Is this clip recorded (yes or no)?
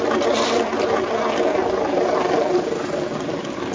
yes